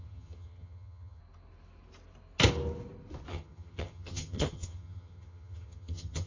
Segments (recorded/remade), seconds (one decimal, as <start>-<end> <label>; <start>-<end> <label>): 0.0-1.2 remade; 1.2-3.3 recorded; 3.3-6.3 remade

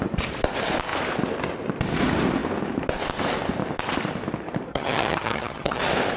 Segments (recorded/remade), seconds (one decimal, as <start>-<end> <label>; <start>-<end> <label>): 0.0-4.7 recorded; 4.7-5.8 remade; 5.8-6.2 recorded

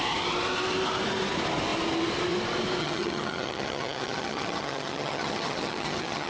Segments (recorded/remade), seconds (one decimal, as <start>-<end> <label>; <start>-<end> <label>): 0.0-2.8 recorded; 2.8-6.3 remade

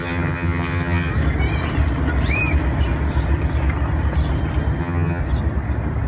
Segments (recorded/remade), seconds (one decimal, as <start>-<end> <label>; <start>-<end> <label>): 0.0-1.1 remade; 1.1-4.8 recorded; 4.8-5.2 remade; 5.2-6.1 recorded

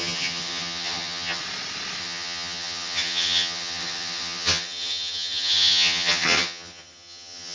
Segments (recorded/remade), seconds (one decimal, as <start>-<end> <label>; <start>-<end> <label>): 0.0-1.4 remade; 1.4-2.0 recorded; 2.0-7.5 remade

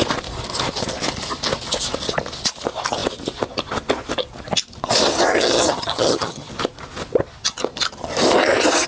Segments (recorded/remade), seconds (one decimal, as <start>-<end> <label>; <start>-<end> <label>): 0.0-5.3 recorded; 5.3-6.5 remade; 6.5-8.9 recorded